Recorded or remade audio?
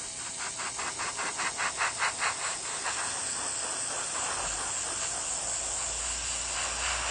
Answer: recorded